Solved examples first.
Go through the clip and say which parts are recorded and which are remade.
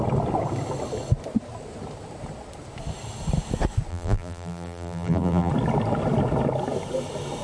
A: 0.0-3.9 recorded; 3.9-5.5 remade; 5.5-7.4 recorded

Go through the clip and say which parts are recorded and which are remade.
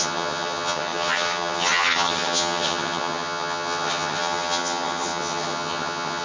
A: 0.0-6.2 remade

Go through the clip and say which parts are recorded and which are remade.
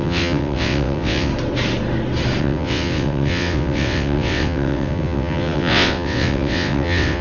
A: 0.0-1.3 remade; 1.3-2.4 recorded; 2.4-7.2 remade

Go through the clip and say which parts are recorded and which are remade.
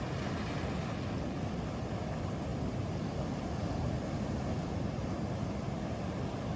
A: 0.0-6.6 recorded